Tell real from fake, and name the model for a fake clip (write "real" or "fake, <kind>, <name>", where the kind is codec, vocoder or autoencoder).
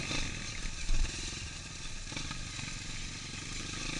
real